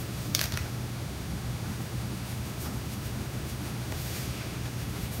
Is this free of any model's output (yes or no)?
no